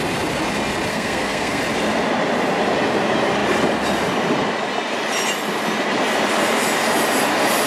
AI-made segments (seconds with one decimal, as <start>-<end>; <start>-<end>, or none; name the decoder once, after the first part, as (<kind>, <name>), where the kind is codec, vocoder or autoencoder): 0.9-1.6 (codec, SNAC)